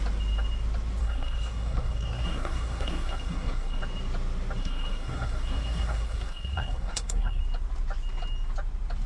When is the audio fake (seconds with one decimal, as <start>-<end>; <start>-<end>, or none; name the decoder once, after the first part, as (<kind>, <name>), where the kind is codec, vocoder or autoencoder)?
1.0-3.8 (codec, SNAC); 4.6-7.4